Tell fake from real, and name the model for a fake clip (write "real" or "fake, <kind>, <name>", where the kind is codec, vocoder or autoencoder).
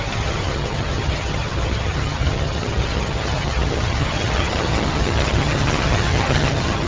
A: fake, vocoder, HiFi-GAN